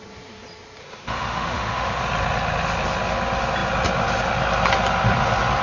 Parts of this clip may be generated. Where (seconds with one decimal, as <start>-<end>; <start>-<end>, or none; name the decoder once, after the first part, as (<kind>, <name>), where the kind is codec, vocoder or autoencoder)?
0.8-2.0 (autoencoder, DAC-VAE)

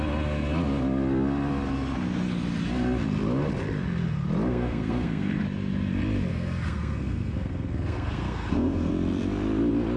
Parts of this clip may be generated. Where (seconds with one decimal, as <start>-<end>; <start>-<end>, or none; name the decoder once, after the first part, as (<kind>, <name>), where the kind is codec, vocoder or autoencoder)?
4.5-5.3 (codec, SNAC); 6.3-8.9